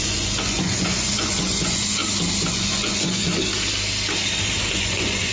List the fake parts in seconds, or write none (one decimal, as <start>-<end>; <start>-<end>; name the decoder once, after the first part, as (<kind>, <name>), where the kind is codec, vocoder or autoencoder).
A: 0.0-2.0 (vocoder, Vocos); 2.5-3.3; 4.7-5.3